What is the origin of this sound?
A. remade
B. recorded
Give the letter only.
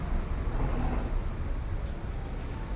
B